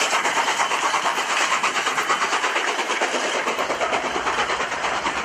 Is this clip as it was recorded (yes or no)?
no